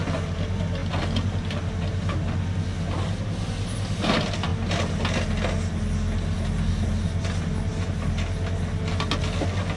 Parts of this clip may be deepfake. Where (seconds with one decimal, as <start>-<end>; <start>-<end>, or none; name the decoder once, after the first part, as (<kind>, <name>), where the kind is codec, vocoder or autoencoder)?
none